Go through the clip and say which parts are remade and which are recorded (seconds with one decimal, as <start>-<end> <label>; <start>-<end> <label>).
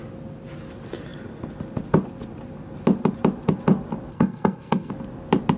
0.0-4.1 recorded; 4.1-4.9 remade; 4.9-5.6 recorded